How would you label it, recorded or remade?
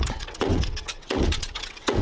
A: remade